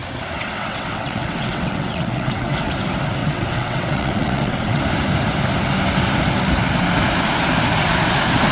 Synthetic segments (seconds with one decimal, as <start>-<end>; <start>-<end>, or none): 0.4-2.7; 3.2-4.8